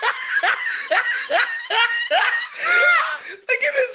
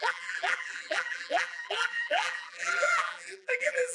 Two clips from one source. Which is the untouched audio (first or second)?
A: first